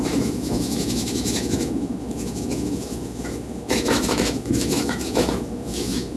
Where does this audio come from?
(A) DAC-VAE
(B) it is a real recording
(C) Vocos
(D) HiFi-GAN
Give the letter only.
A